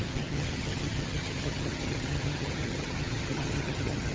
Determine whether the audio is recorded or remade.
remade